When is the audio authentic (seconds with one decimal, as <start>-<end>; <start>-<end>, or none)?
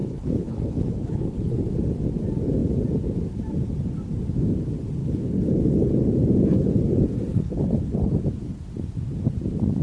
1.7-5.0; 5.9-7.3; 8.2-9.8